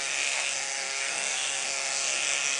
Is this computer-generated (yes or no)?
yes